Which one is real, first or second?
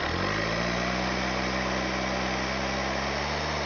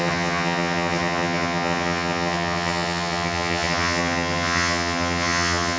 first